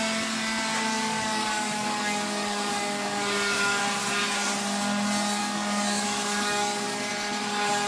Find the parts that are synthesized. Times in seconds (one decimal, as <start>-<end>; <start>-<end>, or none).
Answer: 0.9-3.8; 5.4-7.1